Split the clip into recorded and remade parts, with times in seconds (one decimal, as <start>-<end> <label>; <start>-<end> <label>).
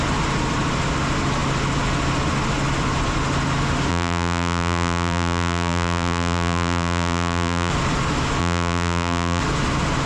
0.0-3.9 recorded; 3.9-7.7 remade; 7.7-8.4 recorded; 8.4-9.4 remade; 9.4-10.1 recorded